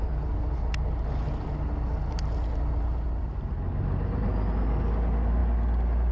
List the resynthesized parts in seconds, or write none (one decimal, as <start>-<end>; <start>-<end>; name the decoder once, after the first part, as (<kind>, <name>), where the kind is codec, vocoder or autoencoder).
none